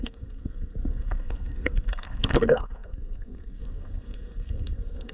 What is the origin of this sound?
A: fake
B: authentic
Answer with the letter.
A